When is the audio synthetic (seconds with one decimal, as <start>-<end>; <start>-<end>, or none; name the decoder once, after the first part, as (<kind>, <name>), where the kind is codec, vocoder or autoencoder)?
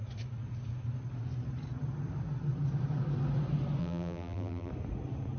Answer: 3.8-4.7 (vocoder, BigVGAN v2)